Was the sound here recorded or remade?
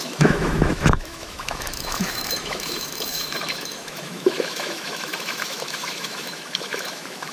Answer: remade